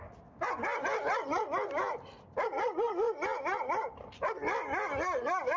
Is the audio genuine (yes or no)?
yes